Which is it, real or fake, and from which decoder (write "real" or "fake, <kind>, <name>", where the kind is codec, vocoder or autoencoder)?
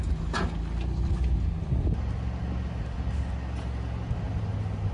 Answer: real